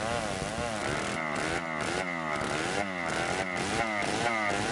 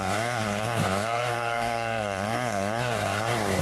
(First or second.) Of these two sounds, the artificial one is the second